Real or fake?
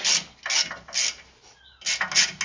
real